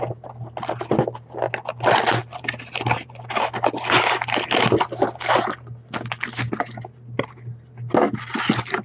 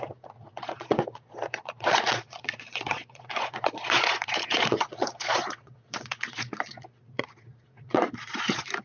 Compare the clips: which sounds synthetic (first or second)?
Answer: second